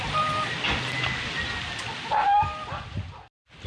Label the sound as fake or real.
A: real